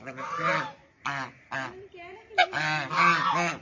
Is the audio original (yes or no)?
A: yes